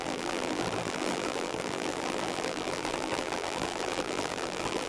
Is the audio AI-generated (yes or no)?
yes